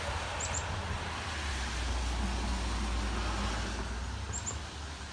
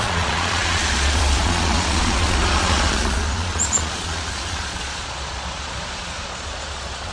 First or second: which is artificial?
second